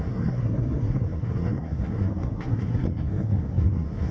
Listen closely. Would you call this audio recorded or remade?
remade